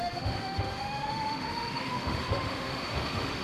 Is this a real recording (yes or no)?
no